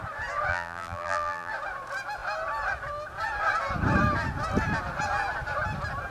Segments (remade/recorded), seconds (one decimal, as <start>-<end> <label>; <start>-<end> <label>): 0.0-0.5 recorded; 0.5-1.5 remade; 1.5-6.1 recorded